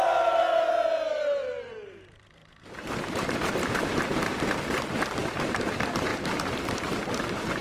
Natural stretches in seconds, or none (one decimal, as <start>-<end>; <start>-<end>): 0.0-2.4; 4.0-6.1